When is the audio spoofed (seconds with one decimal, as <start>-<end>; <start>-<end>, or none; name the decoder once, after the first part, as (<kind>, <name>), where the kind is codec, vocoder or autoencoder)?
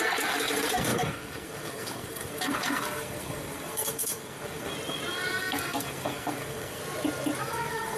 0.0-4.7 (codec, SNAC); 5.3-6.8; 7.4-8.0